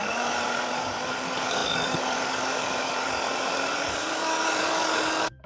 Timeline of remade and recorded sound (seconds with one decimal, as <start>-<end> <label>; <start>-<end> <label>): 0.0-5.5 remade